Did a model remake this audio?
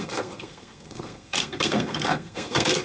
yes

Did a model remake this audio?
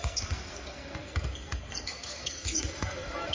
yes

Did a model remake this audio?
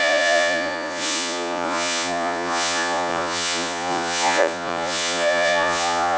yes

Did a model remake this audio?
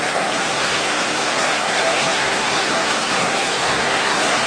yes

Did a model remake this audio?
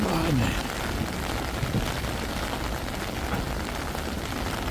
no